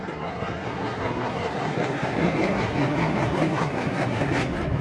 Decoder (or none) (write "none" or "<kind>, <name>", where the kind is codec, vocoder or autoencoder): codec, SNAC